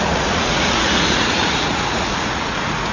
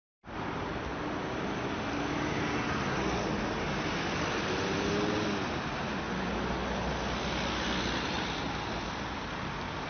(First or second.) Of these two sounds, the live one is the second